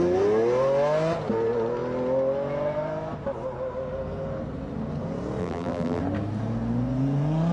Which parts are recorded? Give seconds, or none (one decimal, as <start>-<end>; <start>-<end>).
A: 0.0-5.4; 6.0-7.5